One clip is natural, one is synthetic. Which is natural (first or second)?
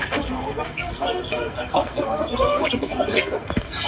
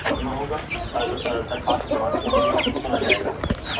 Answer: second